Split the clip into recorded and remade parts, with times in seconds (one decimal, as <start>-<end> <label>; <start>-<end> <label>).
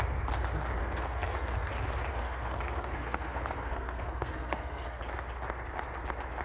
0.0-0.8 recorded; 0.8-1.7 remade; 1.7-2.1 recorded; 2.1-5.0 remade; 5.0-6.4 recorded